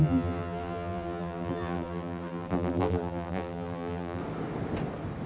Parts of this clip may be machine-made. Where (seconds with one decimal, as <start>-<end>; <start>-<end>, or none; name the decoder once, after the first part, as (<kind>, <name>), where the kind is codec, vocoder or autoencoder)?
0.0-4.2 (vocoder, BigVGAN v2)